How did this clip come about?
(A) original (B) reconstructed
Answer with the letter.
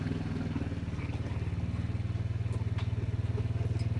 A